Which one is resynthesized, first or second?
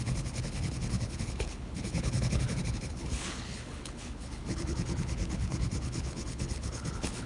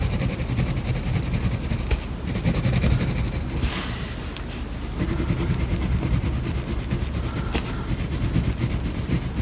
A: first